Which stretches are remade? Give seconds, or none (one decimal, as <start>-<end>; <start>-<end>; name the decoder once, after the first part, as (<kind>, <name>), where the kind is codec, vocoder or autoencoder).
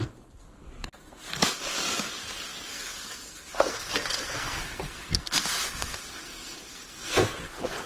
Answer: 0.0-7.9 (codec, SNAC)